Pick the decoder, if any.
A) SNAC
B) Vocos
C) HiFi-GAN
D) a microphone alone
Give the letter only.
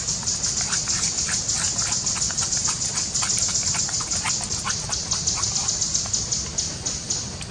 D